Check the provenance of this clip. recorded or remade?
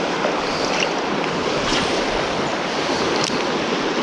recorded